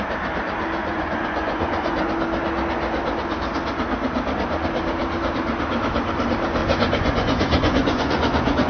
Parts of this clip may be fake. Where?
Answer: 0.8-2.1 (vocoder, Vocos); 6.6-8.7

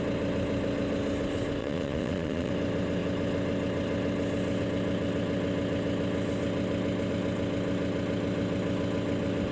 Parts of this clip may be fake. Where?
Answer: 1.6-2.5 (vocoder, Vocos)